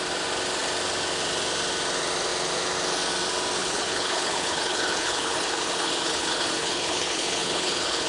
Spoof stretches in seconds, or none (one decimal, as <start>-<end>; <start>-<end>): 3.6-8.1